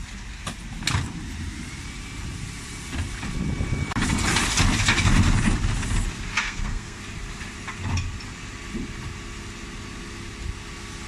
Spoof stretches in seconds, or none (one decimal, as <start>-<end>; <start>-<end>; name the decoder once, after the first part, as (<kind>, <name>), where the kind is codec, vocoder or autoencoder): 6.4-7.0 (codec, SNAC)